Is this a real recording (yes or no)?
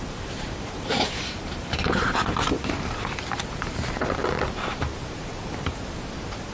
no